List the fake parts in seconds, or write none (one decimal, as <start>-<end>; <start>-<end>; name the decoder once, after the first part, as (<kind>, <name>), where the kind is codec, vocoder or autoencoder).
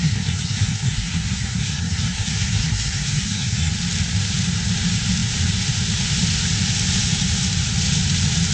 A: 0.0-3.7 (codec, SNAC)